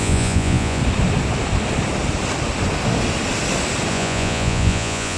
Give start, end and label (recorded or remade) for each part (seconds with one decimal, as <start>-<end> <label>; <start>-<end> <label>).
0.0-0.8 remade; 0.8-3.9 recorded; 3.9-5.2 remade